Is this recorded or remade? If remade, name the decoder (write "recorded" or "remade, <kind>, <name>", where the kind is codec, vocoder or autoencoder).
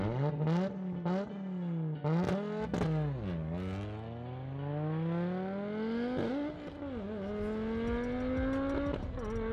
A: recorded